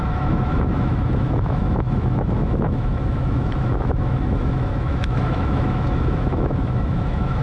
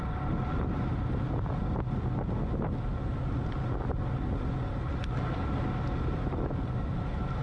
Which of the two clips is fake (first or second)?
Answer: first